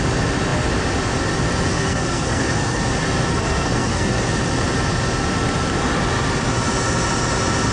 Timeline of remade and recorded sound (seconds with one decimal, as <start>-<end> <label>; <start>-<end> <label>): 0.0-1.7 recorded; 1.7-2.8 remade; 2.8-3.3 recorded; 3.3-4.2 remade; 4.2-7.7 recorded